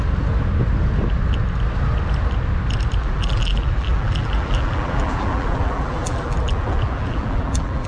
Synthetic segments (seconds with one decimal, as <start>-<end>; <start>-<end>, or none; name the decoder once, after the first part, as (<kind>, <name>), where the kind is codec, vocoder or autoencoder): 3.0-7.9 (vocoder, BigVGAN v2)